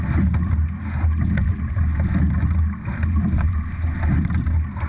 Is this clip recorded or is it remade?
recorded